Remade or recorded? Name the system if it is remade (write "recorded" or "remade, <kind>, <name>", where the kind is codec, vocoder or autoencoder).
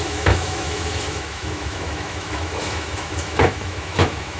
remade, autoencoder, DAC-VAE